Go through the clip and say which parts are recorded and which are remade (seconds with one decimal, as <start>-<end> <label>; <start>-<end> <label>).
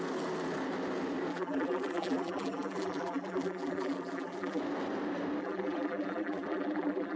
0.0-1.3 recorded; 1.3-4.6 remade; 4.6-5.4 recorded; 5.4-7.2 remade